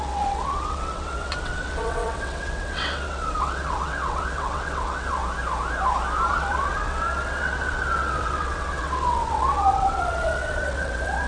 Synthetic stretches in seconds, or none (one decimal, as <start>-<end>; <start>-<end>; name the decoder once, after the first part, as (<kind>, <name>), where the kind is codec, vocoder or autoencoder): 0.0-5.2 (vocoder, WaveNeXt); 6.3-11.3